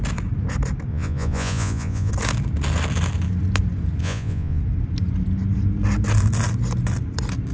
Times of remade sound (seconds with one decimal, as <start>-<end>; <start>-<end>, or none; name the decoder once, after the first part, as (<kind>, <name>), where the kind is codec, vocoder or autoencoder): 0.9-2.1 (vocoder, Vocos); 4.0-4.6